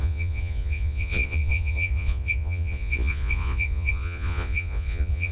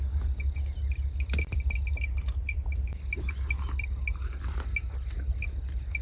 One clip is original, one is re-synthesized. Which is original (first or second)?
second